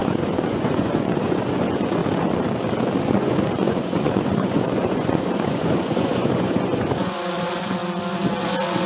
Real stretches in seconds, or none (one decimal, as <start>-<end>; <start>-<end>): 2.0-3.1; 7.8-8.4